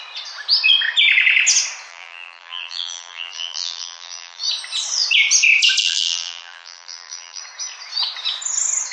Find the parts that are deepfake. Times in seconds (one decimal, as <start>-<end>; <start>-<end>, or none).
1.9-4.4; 5.8-7.4